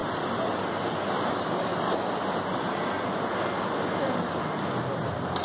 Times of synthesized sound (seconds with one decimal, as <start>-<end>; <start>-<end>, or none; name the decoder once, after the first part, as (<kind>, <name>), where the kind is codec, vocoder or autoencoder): none